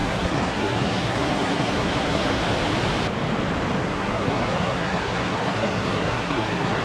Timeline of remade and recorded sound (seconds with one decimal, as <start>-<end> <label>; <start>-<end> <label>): 0.0-2.4 remade; 2.4-3.8 recorded; 3.8-6.8 remade